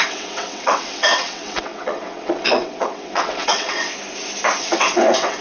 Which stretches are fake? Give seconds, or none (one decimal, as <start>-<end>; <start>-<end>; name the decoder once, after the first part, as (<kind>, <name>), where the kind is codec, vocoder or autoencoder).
0.0-3.9 (vocoder, WaveNeXt); 4.6-5.4

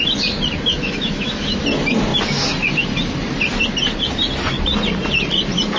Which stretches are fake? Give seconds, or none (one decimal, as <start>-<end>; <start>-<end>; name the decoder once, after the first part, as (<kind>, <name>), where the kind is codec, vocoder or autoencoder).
0.7-1.6 (autoencoder, DAC-VAE)

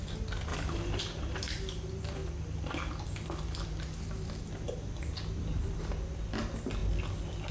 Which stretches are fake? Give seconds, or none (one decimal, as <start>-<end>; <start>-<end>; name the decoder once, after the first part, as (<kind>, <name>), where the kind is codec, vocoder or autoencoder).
none